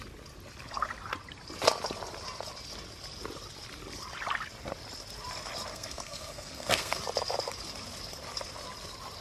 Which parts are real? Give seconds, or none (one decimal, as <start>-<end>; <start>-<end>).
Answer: 0.0-5.7; 7.0-9.2